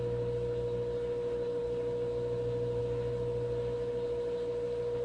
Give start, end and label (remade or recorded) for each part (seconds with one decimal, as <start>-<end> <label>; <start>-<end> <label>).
0.0-5.0 recorded